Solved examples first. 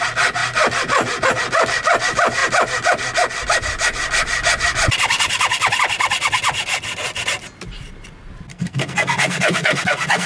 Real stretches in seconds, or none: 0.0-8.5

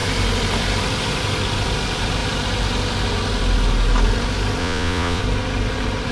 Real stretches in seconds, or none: 0.0-4.6; 5.2-6.1